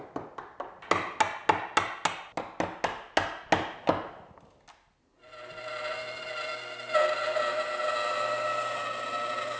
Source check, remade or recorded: recorded